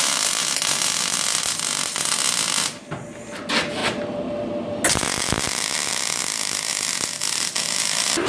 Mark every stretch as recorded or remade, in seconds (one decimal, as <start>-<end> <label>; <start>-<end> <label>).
0.0-8.3 recorded